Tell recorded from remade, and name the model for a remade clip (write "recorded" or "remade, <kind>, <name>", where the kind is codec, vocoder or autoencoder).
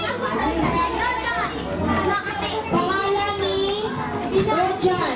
recorded